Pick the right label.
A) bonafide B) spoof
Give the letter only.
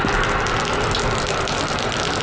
A